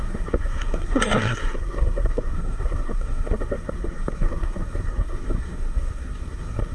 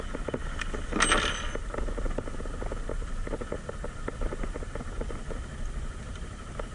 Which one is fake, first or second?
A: first